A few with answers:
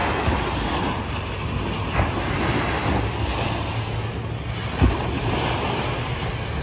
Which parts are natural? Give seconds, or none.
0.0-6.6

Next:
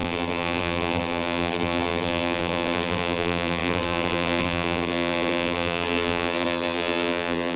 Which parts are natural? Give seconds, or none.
none

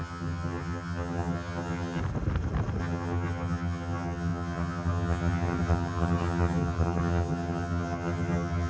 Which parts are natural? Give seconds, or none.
2.0-2.8

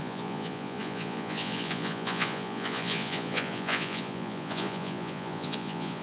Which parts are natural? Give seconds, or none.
none

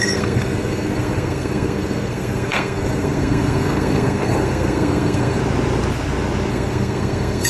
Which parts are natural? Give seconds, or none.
5.4-6.5

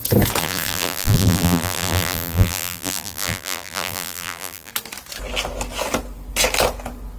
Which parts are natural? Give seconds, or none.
0.0-0.4; 4.7-7.2